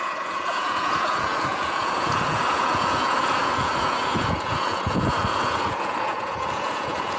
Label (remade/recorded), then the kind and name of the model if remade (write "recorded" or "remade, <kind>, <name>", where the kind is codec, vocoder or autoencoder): remade, vocoder, Vocos